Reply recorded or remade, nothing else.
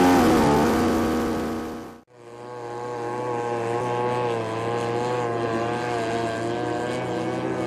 recorded